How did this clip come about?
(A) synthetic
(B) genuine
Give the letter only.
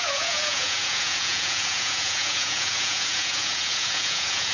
A